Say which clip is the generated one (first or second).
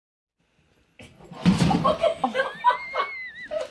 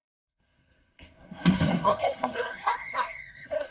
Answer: second